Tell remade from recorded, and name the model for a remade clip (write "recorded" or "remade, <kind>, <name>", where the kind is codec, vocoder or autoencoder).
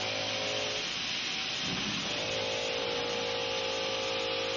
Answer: recorded